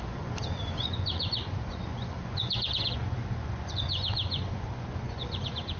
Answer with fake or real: fake